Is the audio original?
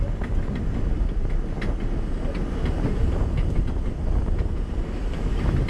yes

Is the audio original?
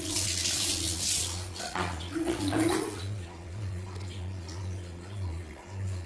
no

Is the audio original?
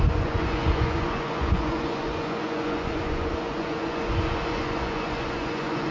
no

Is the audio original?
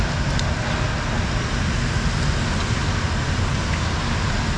yes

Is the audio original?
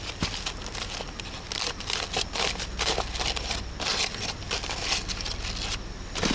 yes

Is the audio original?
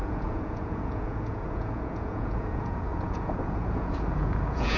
no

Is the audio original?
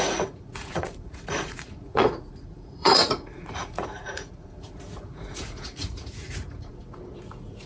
no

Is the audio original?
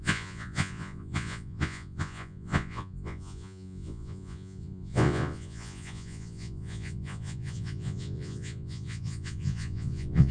no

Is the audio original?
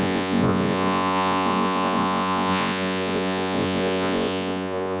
no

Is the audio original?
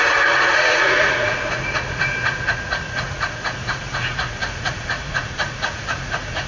no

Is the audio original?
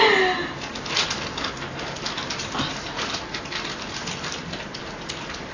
yes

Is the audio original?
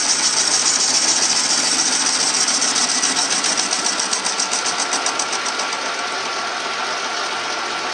yes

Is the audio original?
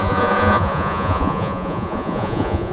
no